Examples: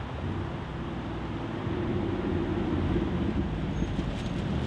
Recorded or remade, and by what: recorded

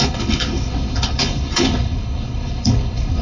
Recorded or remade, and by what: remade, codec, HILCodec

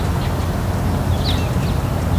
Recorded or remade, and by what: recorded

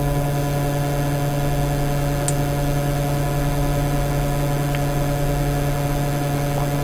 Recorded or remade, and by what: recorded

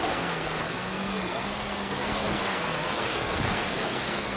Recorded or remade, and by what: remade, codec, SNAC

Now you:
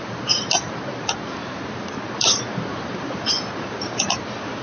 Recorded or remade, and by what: remade, vocoder, BigVGAN v2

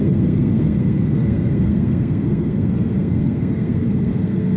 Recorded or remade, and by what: remade, codec, SNAC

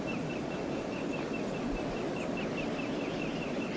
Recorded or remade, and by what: recorded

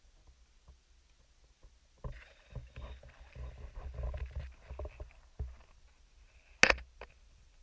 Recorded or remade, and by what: recorded